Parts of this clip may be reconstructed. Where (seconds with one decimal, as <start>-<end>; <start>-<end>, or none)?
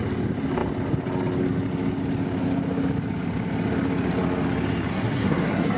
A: 4.9-5.8